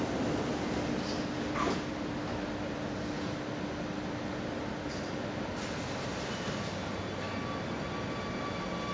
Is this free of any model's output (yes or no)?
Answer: yes